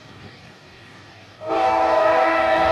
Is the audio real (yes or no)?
no